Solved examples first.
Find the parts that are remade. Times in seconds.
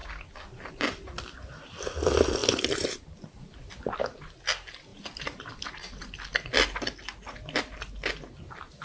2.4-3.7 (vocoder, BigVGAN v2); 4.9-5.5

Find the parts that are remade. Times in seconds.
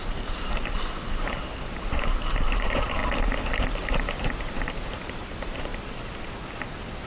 0.0-3.0 (vocoder, BigVGAN v2); 4.7-5.7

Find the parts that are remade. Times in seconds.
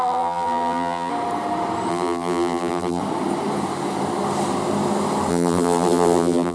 0.0-1.1 (vocoder, BigVGAN v2); 1.9-3.0; 5.3-6.5